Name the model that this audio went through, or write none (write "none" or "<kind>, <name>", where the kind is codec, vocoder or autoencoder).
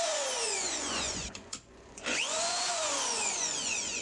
vocoder, Vocos